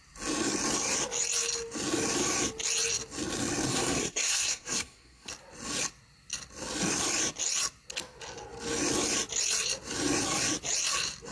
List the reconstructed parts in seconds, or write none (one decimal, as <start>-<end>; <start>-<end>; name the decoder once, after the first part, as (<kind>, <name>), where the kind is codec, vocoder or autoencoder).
3.7-5.3 (codec, SNAC)